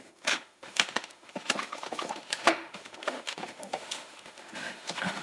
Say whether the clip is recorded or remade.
remade